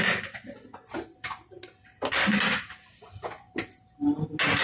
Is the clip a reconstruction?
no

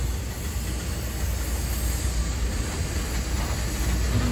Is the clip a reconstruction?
no